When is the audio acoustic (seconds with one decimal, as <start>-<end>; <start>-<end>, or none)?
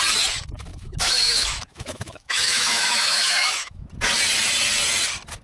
0.0-0.7; 3.9-5.4